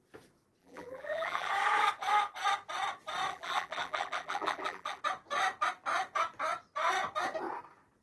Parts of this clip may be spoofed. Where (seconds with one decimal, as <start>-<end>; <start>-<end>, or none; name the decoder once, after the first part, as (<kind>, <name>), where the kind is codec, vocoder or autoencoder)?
0.6-1.5 (vocoder, BigVGAN v2); 3.3-5.0